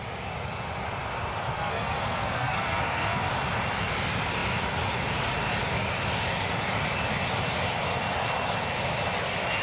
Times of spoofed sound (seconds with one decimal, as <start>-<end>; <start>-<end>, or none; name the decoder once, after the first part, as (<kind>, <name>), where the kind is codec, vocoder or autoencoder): 1.5-3.3 (codec, SNAC)